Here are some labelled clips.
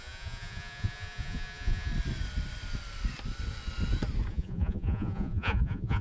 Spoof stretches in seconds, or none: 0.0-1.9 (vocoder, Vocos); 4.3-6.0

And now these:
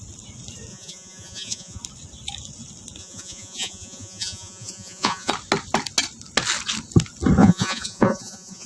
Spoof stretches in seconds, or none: 0.7-1.8 (vocoder, Vocos); 3.0-5.3; 7.4-8.7

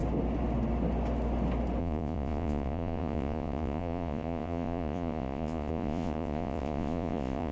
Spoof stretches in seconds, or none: 1.8-7.5 (vocoder, Vocos)

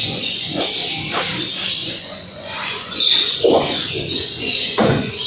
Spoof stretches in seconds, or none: 0.0-0.6 (vocoder, Vocos); 1.8-5.3

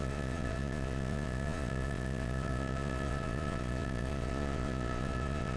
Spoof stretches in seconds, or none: 0.0-5.6 (vocoder, Vocos)